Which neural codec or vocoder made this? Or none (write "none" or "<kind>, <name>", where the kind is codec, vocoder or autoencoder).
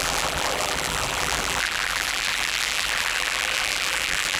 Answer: vocoder, BigVGAN v2